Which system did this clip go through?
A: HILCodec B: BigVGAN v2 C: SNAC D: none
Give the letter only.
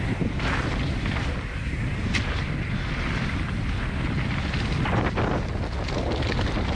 D